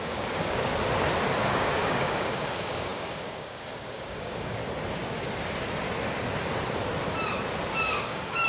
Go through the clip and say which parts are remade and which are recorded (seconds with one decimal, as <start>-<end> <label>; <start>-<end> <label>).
0.0-0.7 remade; 0.7-1.4 recorded; 1.4-4.6 remade; 4.6-7.9 recorded; 7.9-8.5 remade